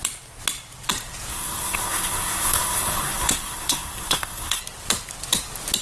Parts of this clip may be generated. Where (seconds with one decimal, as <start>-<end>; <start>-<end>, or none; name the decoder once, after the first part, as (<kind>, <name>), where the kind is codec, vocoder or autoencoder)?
1.3-4.6 (codec, SNAC)